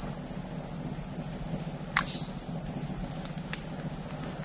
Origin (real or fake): real